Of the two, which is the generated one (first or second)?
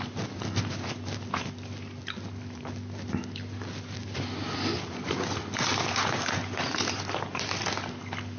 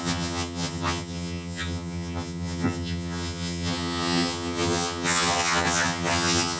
second